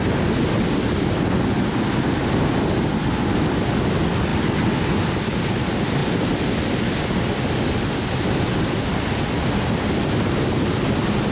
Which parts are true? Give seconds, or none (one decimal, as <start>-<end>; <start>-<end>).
0.0-11.3